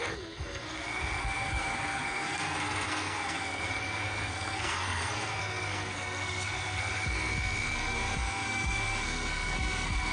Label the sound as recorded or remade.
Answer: remade